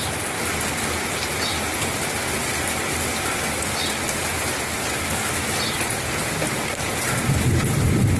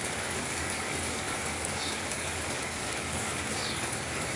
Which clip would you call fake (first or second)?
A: second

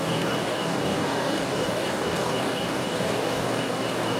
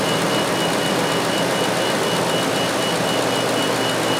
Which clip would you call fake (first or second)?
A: first